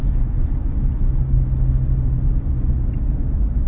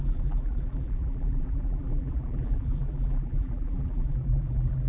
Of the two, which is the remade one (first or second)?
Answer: second